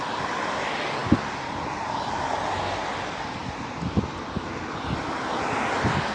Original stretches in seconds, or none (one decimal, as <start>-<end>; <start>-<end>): 0.0-3.4; 4.7-6.1